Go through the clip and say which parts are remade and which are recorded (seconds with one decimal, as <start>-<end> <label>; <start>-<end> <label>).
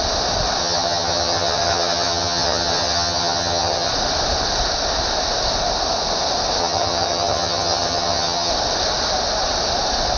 0.0-0.6 recorded; 0.6-3.9 remade; 3.9-6.6 recorded; 6.6-8.5 remade; 8.5-10.2 recorded